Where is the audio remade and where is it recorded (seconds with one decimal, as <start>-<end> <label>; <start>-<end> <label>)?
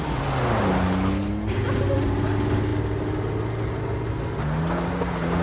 0.0-5.4 recorded